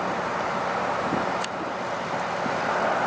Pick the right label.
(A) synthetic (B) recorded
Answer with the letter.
B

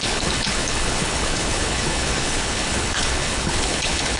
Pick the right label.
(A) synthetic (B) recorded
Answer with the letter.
A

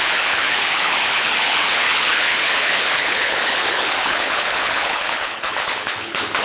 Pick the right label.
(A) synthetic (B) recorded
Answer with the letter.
A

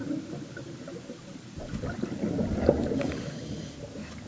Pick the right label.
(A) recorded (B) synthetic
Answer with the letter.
A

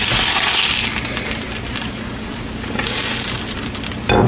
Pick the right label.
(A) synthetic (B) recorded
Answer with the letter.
B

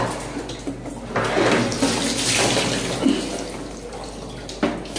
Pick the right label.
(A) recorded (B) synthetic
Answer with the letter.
A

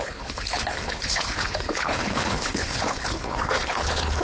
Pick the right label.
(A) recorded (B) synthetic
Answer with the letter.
B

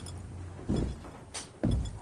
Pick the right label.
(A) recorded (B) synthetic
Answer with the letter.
A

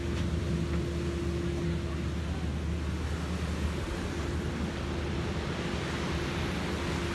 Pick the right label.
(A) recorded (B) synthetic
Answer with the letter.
A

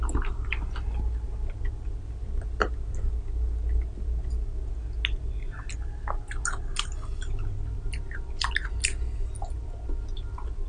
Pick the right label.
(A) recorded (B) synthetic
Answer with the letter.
A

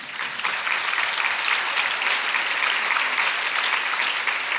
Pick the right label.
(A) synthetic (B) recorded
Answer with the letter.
B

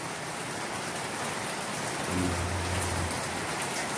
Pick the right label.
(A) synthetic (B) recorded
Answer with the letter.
B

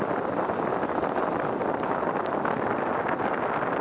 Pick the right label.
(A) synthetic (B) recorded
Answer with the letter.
B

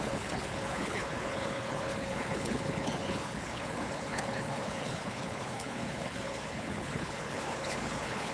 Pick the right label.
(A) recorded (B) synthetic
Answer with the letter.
B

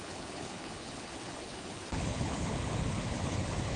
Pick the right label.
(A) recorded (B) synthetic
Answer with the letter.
B